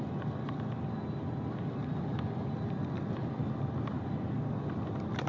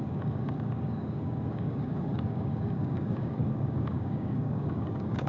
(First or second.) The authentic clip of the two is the first